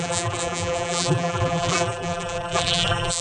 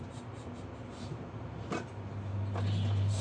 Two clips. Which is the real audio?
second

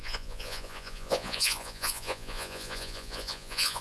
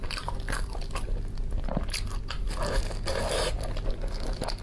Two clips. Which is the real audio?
second